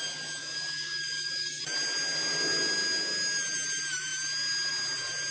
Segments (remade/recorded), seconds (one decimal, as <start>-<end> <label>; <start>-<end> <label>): 0.0-0.4 recorded; 0.4-1.6 remade; 1.6-5.3 recorded